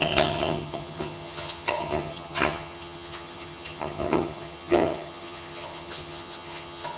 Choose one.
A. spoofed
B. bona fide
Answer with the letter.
A